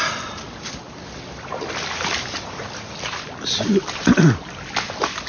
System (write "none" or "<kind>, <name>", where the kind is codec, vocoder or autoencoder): none